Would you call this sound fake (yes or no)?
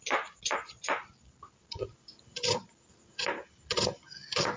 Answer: no